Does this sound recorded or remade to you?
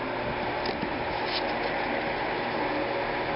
recorded